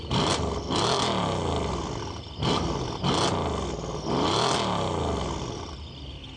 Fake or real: real